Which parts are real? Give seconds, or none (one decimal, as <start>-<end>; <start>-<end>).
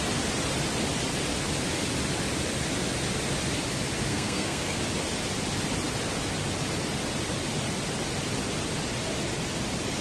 0.0-4.1; 4.8-10.0